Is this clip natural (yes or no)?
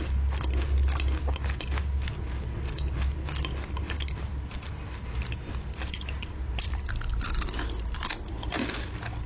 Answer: yes